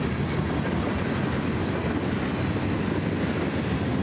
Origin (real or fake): real